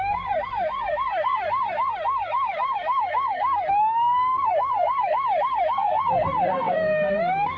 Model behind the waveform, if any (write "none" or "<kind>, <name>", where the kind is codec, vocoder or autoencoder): codec, SNAC